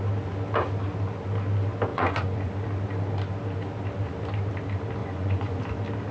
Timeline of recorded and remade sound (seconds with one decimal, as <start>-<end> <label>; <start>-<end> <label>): 0.0-1.9 recorded; 1.9-2.5 remade; 2.5-5.0 recorded; 5.0-5.6 remade; 5.6-6.1 recorded